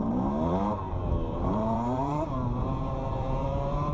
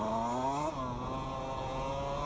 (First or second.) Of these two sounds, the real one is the second